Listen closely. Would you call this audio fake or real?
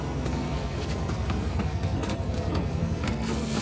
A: fake